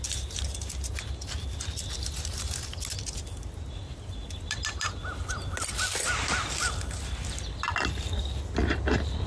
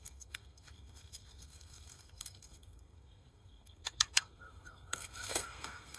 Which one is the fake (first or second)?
second